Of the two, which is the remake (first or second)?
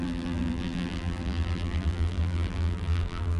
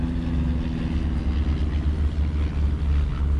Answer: first